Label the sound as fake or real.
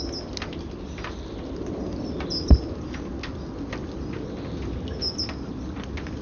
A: real